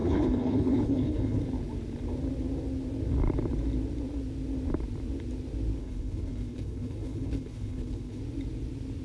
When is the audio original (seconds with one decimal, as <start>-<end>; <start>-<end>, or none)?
1.4-5.8; 8.2-9.0